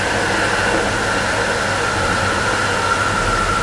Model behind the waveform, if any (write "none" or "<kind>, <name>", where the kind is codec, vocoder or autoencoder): none